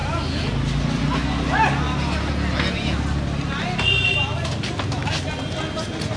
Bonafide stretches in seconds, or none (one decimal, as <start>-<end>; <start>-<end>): 0.0-6.2